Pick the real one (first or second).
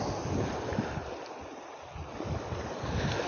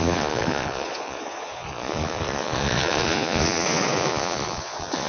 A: first